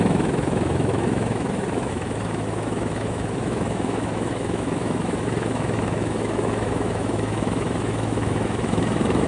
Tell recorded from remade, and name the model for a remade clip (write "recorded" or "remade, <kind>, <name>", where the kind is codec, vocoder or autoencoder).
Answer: remade, autoencoder, DAC-VAE